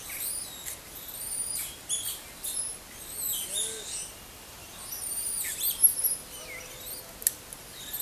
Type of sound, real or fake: real